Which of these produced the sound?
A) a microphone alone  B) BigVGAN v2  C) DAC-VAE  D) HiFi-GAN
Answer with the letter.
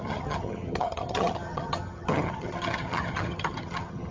D